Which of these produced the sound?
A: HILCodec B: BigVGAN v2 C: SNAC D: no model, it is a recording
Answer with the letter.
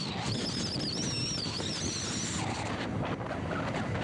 D